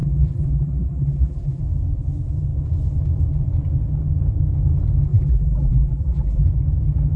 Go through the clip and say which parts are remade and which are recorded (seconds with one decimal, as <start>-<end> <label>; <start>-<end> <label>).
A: 0.0-1.6 remade; 1.6-5.1 recorded; 5.1-6.4 remade; 6.4-7.2 recorded